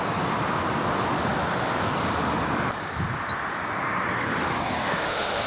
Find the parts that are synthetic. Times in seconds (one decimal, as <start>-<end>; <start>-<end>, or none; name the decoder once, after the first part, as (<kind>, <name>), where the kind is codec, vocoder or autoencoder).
4.8-5.5 (autoencoder, DAC-VAE)